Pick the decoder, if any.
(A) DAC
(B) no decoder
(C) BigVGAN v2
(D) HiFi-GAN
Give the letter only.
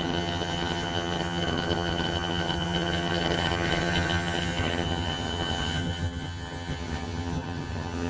D